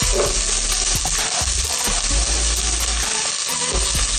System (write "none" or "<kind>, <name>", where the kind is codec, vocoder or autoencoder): none